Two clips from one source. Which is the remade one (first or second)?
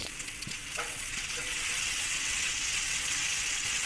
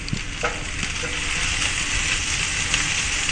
first